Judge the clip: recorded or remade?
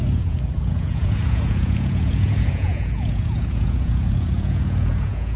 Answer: remade